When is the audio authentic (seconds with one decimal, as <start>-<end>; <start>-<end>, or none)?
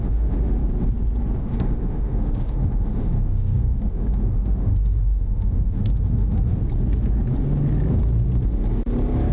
0.6-1.4; 6.6-9.3